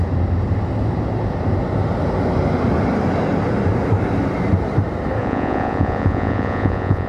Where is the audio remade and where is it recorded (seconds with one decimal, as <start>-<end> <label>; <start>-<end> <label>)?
0.0-5.2 recorded; 5.2-7.1 remade